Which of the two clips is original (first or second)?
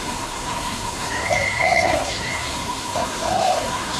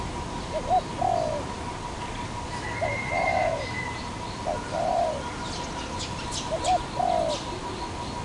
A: second